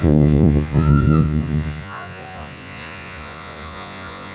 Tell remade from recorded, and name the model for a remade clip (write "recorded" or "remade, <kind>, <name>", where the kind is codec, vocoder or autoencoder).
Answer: remade, vocoder, Vocos